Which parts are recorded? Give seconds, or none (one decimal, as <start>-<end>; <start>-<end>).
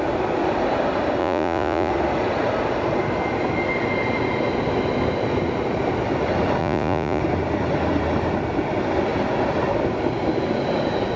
0.0-1.2; 1.9-6.6; 7.2-11.2